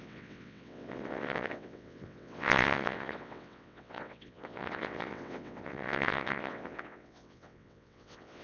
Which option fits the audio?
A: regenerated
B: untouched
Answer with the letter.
A